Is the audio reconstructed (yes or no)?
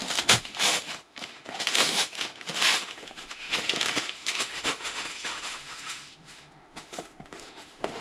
yes